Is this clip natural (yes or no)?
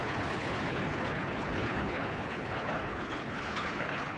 no